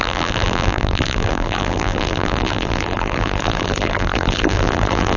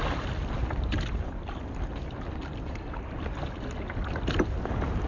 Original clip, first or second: second